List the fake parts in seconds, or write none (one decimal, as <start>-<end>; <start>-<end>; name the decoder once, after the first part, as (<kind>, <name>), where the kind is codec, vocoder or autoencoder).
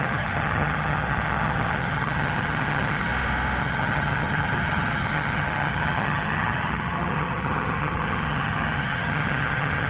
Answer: 0.0-3.1 (vocoder, HiFi-GAN); 3.6-9.9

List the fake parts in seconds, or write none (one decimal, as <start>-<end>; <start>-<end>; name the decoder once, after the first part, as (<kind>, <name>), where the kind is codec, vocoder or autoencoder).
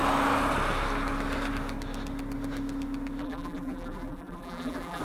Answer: 3.2-5.0 (vocoder, BigVGAN v2)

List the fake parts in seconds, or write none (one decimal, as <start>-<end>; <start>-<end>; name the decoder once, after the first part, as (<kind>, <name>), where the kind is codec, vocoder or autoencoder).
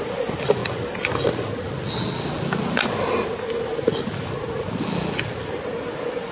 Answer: none